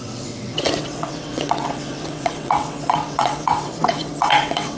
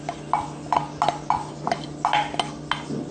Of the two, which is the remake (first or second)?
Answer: first